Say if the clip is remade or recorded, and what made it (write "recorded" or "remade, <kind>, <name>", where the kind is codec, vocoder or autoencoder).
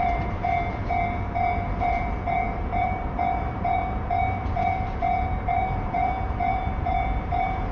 remade, vocoder, BigVGAN v2